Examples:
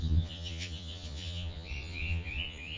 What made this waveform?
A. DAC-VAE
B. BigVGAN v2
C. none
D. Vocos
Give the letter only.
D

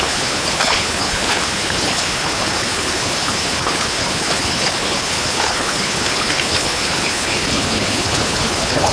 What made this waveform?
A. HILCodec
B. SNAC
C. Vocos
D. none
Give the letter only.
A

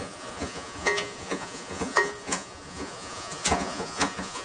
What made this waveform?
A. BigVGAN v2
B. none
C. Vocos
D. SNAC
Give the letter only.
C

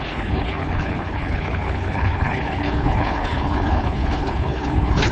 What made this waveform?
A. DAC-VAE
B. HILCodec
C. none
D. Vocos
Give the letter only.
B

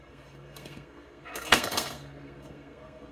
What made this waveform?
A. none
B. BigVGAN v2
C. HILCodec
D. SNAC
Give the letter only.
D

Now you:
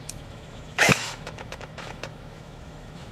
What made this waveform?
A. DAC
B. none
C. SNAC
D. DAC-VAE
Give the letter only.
D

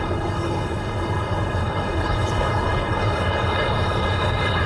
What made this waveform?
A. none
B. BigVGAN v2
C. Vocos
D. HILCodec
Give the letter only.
D